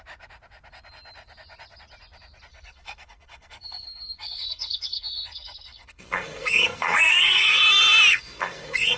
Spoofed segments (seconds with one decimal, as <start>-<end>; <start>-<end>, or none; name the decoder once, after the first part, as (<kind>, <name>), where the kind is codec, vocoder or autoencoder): 2.5-7.6 (codec, SNAC); 8.1-9.0